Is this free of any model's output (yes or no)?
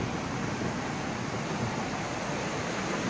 yes